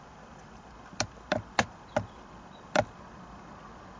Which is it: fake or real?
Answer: real